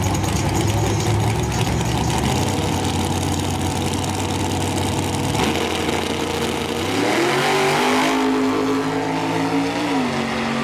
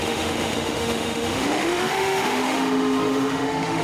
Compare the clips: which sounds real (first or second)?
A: first